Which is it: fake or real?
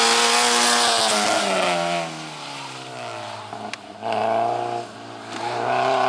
real